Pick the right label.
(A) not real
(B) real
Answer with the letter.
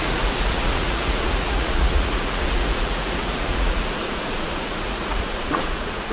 A